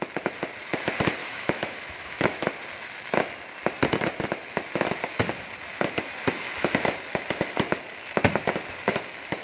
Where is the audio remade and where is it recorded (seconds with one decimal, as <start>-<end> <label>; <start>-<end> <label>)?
0.0-1.2 recorded; 1.2-2.5 remade; 2.5-9.4 recorded